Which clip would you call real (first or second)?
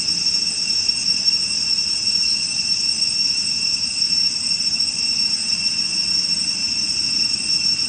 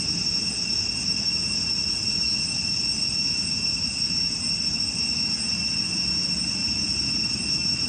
second